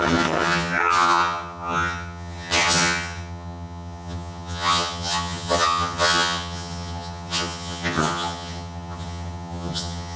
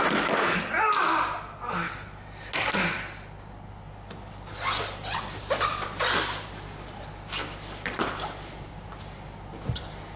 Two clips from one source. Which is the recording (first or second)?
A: second